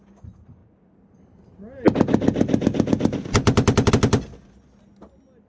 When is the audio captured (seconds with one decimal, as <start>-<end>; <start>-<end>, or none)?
0.0-5.5

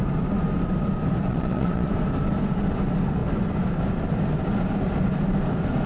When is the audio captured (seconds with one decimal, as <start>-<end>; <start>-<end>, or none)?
0.0-1.3; 1.9-5.9

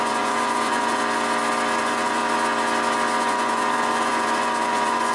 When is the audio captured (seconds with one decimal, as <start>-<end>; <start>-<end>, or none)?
1.0-1.8; 2.2-3.2

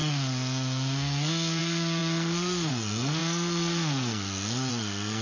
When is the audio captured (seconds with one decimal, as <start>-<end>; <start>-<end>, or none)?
none

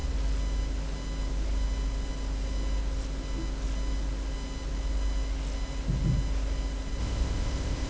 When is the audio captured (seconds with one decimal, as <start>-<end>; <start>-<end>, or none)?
0.0-7.0

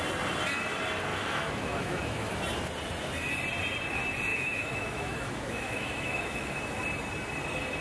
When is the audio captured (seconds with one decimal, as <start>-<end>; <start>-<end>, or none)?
0.0-1.1; 2.4-4.3; 6.6-7.8